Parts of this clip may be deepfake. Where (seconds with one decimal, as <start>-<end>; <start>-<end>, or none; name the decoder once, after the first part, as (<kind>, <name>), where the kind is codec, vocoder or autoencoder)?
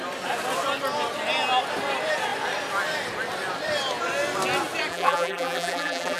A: 4.9-6.2 (vocoder, BigVGAN v2)